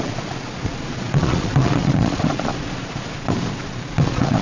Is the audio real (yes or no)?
no